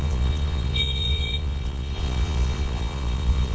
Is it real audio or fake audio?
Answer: fake